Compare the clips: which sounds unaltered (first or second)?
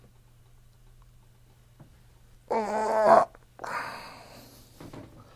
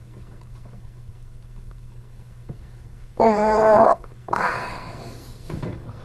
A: first